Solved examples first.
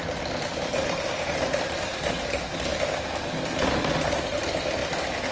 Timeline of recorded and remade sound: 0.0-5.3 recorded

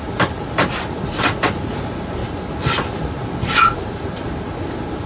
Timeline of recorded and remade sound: 0.0-5.1 recorded

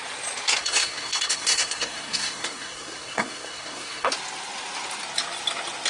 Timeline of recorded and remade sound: 0.0-0.6 recorded; 0.6-4.1 remade; 4.1-5.9 recorded

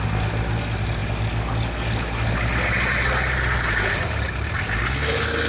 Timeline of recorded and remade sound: 0.0-5.5 recorded

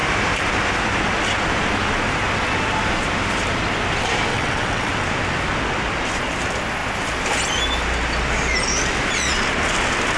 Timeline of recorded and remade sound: 0.0-4.3 recorded; 4.3-4.9 remade; 4.9-10.2 recorded

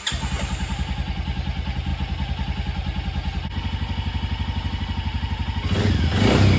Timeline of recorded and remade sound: 0.0-6.6 recorded